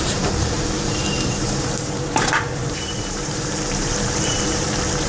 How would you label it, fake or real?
fake